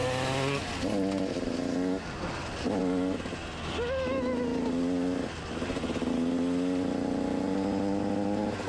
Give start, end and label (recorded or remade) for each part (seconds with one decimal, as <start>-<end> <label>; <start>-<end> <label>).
0.0-8.7 recorded